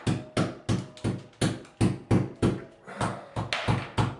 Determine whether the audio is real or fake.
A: real